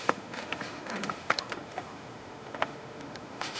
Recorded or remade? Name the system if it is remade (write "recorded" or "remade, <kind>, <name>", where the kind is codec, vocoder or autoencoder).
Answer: remade, autoencoder, DAC-VAE